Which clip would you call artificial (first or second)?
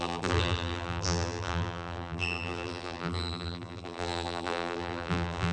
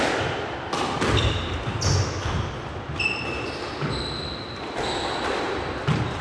first